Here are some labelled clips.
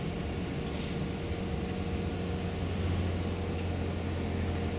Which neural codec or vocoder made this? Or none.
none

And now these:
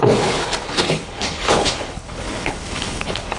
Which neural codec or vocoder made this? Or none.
codec, HILCodec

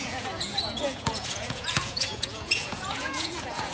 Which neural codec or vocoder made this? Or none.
vocoder, Vocos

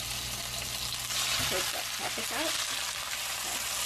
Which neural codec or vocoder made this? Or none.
none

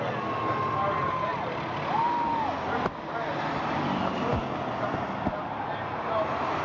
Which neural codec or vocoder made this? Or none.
none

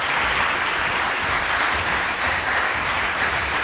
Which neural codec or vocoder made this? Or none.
none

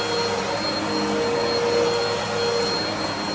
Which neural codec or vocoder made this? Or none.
none